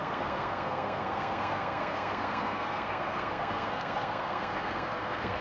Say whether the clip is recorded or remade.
remade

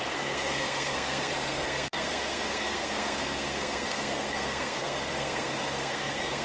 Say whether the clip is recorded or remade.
remade